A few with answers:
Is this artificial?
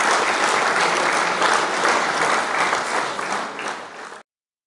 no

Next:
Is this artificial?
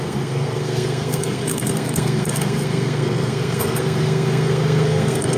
yes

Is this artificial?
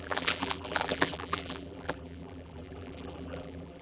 yes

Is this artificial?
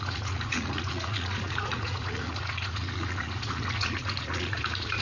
yes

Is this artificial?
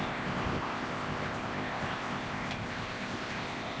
yes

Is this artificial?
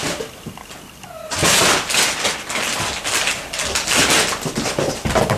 no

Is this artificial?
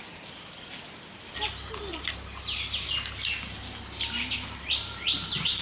no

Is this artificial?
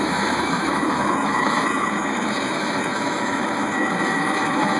yes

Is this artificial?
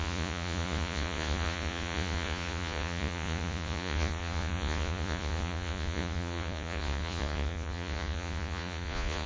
yes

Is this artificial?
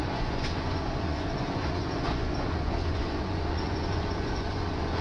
yes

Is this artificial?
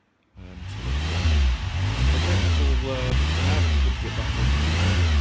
no